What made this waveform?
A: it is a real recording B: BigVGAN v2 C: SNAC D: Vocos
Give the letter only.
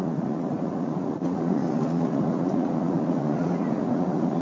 D